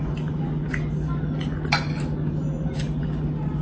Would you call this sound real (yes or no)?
yes